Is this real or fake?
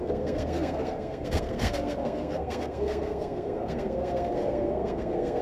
fake